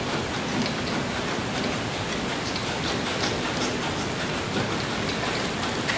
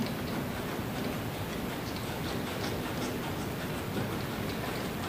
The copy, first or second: first